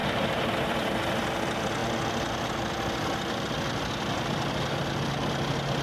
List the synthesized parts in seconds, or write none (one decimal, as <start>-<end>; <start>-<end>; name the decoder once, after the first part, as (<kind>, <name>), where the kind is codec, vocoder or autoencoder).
0.0-0.7 (vocoder, BigVGAN v2)